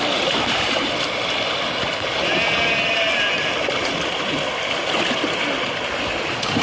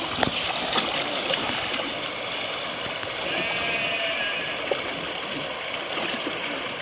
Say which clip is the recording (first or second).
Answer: first